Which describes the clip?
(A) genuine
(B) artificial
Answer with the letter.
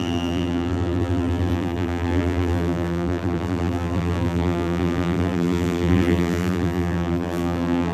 B